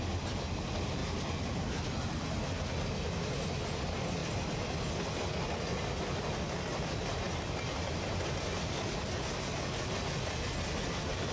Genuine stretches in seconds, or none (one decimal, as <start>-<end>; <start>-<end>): 0.0-11.3